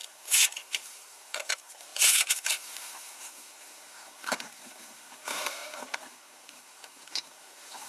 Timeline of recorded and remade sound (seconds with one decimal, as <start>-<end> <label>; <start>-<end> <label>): 0.0-7.9 remade